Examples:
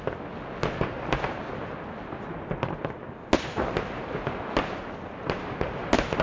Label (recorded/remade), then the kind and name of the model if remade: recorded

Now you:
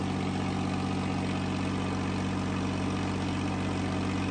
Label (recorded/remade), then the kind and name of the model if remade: recorded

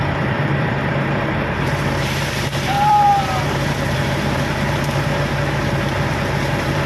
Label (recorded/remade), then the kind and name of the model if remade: remade, vocoder, BigVGAN v2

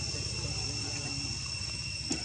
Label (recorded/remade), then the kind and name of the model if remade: recorded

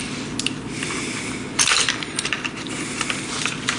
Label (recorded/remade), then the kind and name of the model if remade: recorded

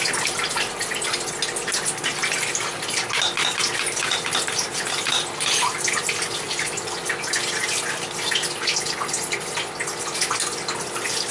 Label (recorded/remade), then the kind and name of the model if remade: recorded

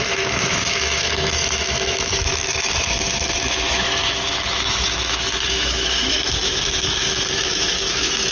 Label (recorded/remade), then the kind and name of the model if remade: remade, autoencoder, DAC-VAE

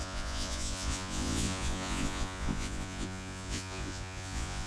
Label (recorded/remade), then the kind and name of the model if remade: remade, vocoder, Vocos